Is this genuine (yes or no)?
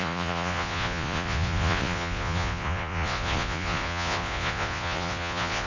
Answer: no